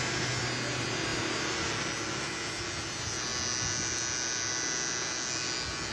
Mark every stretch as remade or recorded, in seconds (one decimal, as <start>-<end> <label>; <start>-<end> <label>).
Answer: 0.0-5.9 recorded